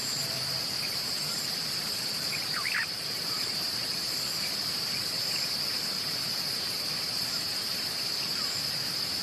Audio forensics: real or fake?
fake